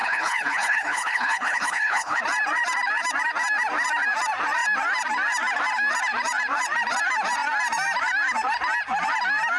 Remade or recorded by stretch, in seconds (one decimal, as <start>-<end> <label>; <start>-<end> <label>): 0.0-2.2 remade; 2.2-9.6 recorded